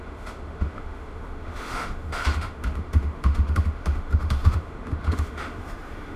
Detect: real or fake fake